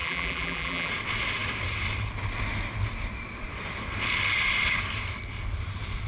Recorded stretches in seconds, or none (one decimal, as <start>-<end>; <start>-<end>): 0.9-6.1